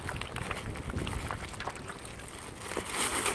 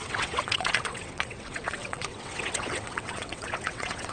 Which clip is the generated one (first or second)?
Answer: second